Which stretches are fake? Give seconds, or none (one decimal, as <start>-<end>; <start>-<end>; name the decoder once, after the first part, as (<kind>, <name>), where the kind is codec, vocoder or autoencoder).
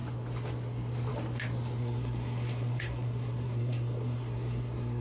1.8-5.0 (codec, SNAC)